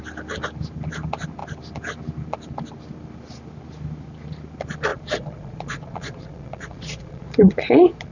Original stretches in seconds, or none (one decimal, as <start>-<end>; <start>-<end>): 0.0-4.9